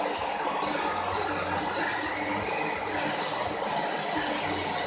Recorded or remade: recorded